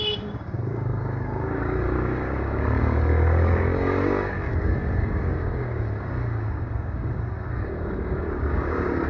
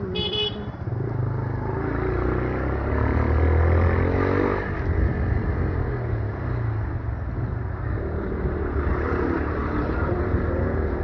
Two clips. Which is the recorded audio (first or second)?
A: second